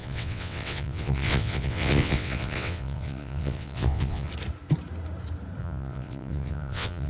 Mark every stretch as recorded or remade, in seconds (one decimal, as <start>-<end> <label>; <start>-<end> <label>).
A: 0.0-4.3 remade; 4.3-5.6 recorded; 5.6-7.1 remade